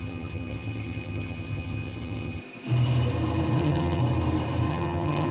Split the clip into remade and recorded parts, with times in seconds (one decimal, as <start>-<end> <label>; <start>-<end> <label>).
0.0-2.4 remade; 2.4-3.6 recorded; 3.6-4.0 remade; 4.0-4.7 recorded; 4.7-5.3 remade

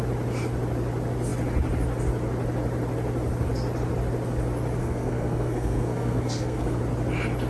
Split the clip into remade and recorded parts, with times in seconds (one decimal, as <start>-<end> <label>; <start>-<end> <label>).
0.0-4.8 recorded; 4.8-6.8 remade; 6.8-7.5 recorded

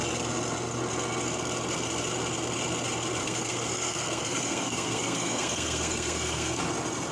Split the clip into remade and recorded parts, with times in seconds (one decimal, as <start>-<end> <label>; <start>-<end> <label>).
0.0-3.2 recorded; 3.2-6.6 remade; 6.6-7.1 recorded

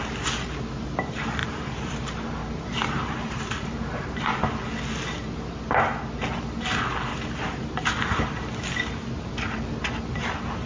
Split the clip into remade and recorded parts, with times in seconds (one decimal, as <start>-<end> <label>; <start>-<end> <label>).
0.0-1.4 recorded; 1.4-1.9 remade; 1.9-2.4 recorded; 2.4-4.2 remade; 4.2-7.1 recorded; 7.1-7.7 remade; 7.7-10.7 recorded